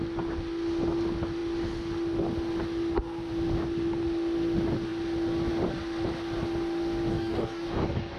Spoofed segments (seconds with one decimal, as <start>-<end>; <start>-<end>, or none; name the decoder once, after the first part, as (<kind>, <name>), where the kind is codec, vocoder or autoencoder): 7.1-8.2 (codec, DAC)